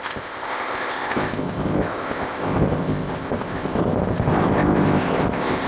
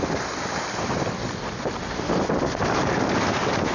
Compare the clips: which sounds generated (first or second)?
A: first